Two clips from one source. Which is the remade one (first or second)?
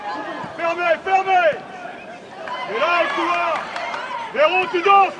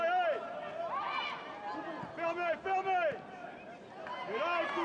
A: first